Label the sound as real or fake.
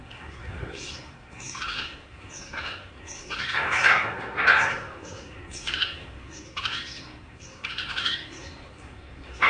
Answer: fake